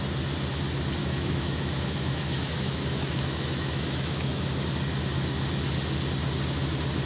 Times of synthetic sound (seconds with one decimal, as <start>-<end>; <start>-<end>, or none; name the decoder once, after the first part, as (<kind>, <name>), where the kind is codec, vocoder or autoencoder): 1.0-4.4 (autoencoder, DAC-VAE)